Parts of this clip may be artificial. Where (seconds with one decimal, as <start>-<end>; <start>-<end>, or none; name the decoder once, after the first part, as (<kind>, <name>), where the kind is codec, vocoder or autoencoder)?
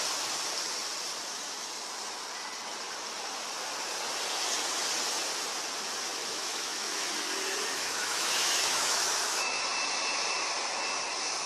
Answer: 6.2-7.1 (autoencoder, DAC-VAE); 7.7-9.6